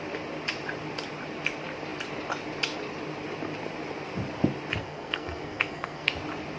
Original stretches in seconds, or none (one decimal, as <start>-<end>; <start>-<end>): 0.0-4.8; 6.1-6.6